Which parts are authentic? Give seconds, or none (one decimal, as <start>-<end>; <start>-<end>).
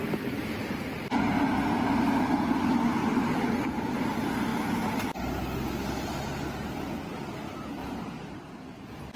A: 0.0-3.0; 4.0-7.8